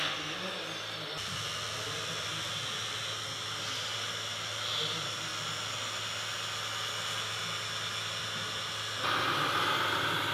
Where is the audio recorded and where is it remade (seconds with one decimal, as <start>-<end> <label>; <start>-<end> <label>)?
0.0-10.3 recorded